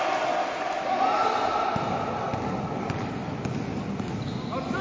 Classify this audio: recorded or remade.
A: recorded